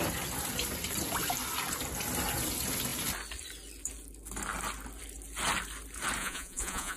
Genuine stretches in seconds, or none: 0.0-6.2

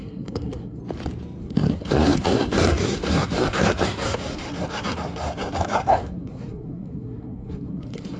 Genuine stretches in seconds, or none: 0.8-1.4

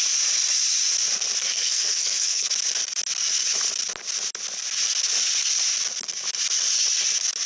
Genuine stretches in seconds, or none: 0.0-1.4; 2.5-7.5

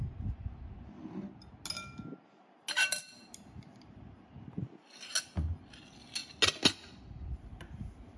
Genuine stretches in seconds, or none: 0.0-8.2